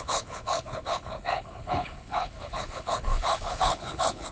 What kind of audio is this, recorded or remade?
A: remade